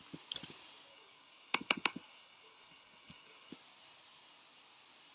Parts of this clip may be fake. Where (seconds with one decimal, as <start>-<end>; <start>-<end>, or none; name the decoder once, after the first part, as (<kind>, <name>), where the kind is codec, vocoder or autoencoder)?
0.9-3.5 (codec, DAC)